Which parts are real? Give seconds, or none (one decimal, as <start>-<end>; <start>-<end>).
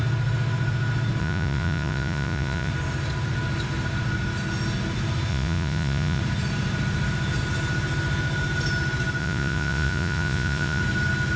0.0-1.2; 2.7-5.3; 6.2-9.2; 10.8-11.4